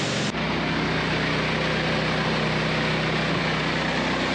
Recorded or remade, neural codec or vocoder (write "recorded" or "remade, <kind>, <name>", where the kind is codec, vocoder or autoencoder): recorded